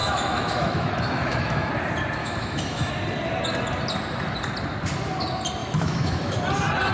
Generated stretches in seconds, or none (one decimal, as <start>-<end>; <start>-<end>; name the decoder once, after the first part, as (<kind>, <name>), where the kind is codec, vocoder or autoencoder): 0.0-1.7 (autoencoder, DAC-VAE); 2.2-2.9; 5.6-6.4